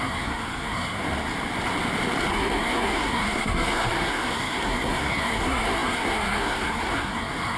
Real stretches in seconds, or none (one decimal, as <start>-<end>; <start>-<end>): 1.0-2.3